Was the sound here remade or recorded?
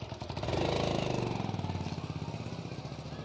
recorded